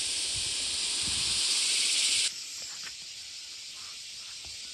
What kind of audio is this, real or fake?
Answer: real